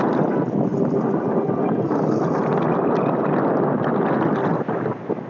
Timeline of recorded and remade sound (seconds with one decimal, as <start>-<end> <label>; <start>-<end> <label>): 0.0-0.7 recorded; 0.7-3.9 remade; 3.9-5.3 recorded